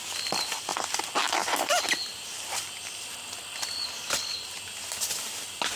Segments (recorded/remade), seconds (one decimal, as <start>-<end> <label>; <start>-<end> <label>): 0.0-5.8 recorded